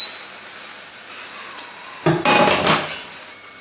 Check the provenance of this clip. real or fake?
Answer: real